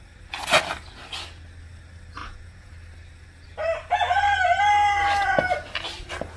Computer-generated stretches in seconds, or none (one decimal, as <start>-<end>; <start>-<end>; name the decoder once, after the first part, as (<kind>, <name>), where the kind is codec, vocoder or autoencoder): 2.2-2.7 (vocoder, Vocos)